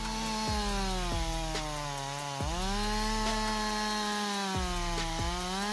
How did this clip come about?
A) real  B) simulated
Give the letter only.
A